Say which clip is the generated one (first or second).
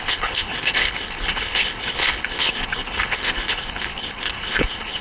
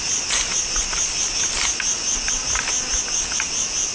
first